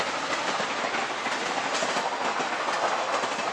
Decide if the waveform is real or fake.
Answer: real